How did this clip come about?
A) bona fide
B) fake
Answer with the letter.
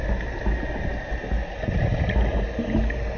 A